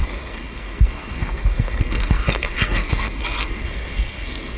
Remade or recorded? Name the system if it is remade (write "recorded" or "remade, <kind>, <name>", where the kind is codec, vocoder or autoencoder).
remade, codec, SNAC